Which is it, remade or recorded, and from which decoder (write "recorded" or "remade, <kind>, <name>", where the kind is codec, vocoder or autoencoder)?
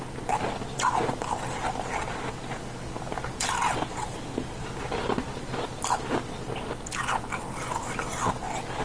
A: recorded